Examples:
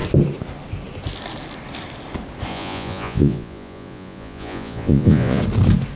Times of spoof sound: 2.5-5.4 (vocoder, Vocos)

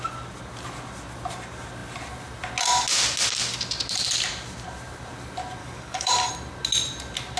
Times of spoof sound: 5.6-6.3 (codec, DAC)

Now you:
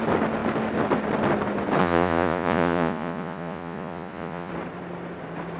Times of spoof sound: 1.8-4.5 (vocoder, Vocos)

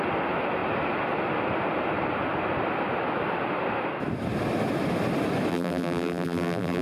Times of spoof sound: 5.5-6.8 (vocoder, BigVGAN v2)

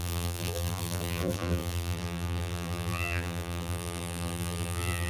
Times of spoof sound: 0.0-5.1 (vocoder, BigVGAN v2)